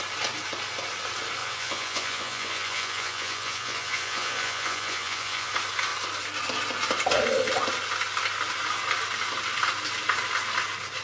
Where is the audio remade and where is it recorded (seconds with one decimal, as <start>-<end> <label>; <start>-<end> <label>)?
0.0-1.4 recorded; 1.4-5.5 remade; 5.5-11.0 recorded